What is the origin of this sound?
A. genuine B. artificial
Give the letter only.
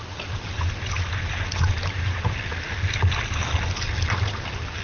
A